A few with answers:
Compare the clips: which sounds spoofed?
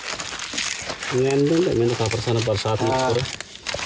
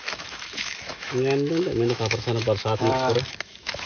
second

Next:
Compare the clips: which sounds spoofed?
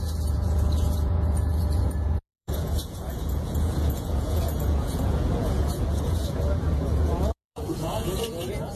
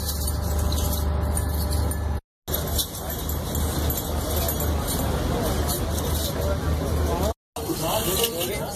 first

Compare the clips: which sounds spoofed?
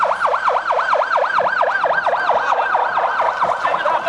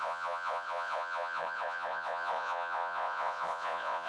second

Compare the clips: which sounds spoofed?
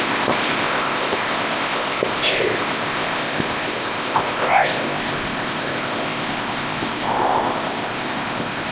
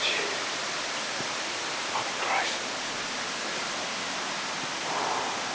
first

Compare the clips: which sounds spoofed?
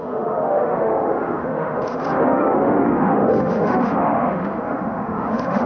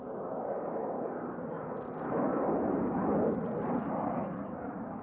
first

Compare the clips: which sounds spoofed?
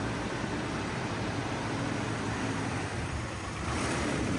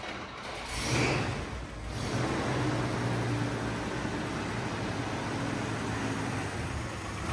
first